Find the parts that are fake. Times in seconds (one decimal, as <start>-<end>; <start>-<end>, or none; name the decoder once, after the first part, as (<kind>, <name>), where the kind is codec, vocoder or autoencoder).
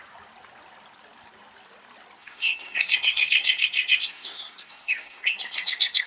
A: 2.2-6.1 (codec, SNAC)